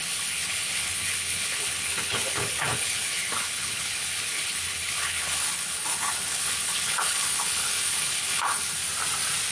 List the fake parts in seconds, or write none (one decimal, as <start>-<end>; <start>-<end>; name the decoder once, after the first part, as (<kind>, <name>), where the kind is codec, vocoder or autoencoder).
0.0-8.8 (codec, HILCodec)